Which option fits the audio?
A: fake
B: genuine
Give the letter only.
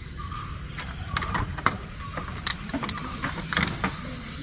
B